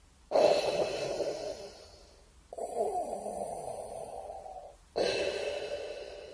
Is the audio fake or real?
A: real